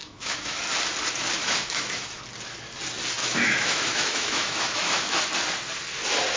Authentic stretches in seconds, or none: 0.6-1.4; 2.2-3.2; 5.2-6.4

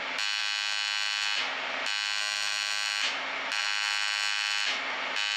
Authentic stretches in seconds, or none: 0.0-5.4

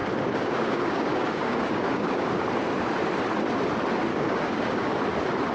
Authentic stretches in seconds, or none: 2.4-4.1; 4.9-5.5

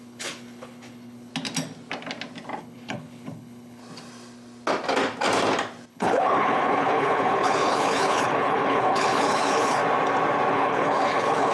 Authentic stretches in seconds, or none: 1.3-2.6; 3.8-5.9; 9.8-10.5

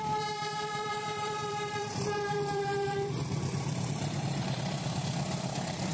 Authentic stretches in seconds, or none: none

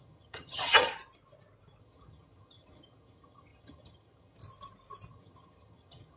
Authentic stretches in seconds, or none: 0.9-1.8; 4.4-5.1

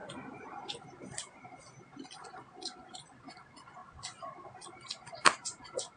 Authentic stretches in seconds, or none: 0.0-6.0

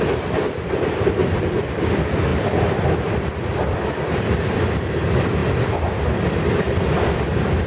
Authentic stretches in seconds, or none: 5.4-6.2